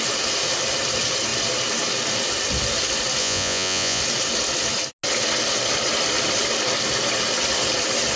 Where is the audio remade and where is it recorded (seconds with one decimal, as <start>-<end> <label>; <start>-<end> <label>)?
0.0-3.2 recorded; 3.2-4.0 remade; 4.0-8.2 recorded